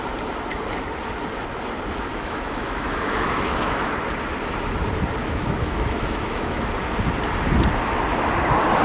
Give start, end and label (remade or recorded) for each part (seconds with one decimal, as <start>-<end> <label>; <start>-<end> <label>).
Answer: 0.0-2.1 recorded; 2.1-3.9 remade; 3.9-5.2 recorded; 5.2-6.6 remade; 6.6-8.8 recorded